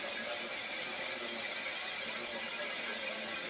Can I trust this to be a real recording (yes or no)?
yes